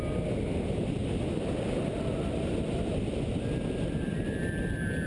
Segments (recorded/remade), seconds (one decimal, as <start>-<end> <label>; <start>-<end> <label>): 0.0-5.1 recorded